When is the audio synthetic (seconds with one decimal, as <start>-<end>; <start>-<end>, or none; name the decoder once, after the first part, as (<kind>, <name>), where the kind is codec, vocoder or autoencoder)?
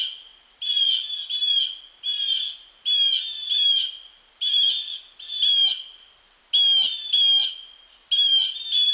none